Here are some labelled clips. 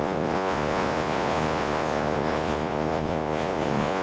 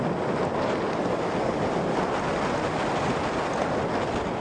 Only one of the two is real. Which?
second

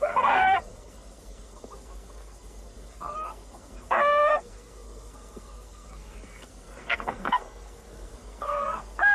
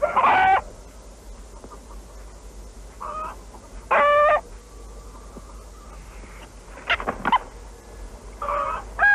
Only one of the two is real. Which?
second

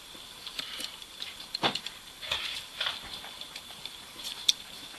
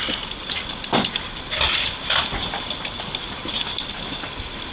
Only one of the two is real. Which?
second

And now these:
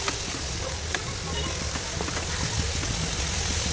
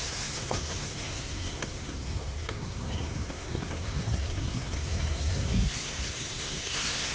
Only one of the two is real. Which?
first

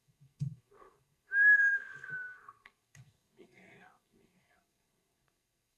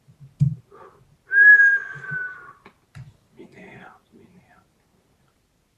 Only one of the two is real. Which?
second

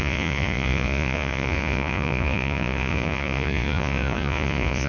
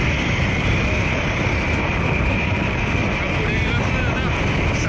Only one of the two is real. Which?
second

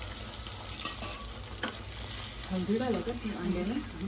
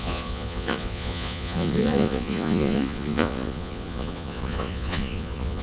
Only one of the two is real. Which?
first